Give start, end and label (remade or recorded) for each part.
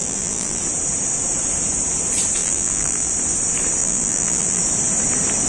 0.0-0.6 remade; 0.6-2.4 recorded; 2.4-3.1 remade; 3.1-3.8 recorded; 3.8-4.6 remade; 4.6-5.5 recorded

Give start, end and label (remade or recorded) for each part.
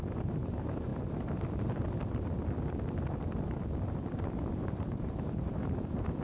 0.0-0.9 remade; 0.9-4.6 recorded; 4.6-6.2 remade